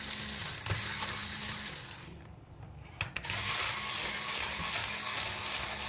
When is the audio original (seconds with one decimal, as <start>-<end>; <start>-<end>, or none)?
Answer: 0.0-1.2; 3.1-5.9